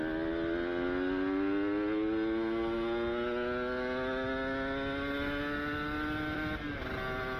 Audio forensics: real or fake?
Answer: real